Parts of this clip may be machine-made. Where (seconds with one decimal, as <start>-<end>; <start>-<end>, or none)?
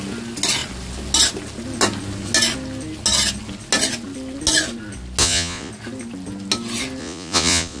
5.2-5.7; 7.0-7.8